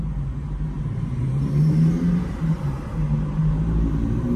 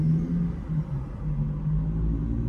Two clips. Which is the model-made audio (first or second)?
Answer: first